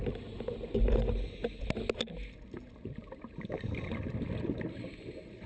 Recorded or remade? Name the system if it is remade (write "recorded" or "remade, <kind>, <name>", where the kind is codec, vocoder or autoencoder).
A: recorded